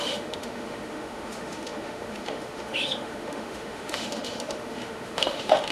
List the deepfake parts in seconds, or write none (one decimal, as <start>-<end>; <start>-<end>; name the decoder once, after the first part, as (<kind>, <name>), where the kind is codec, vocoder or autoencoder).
0.0-5.7 (autoencoder, DAC-VAE)